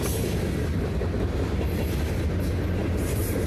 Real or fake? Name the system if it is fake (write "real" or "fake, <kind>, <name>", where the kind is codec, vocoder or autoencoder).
real